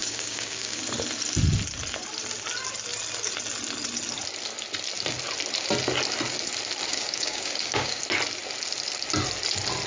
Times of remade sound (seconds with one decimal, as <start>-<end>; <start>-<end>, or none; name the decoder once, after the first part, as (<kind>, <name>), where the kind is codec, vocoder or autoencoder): 0.0-0.8 (codec, DAC); 6.9-8.0